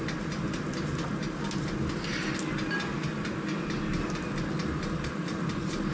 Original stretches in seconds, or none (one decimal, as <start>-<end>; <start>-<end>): 0.0-5.9